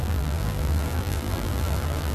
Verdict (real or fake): fake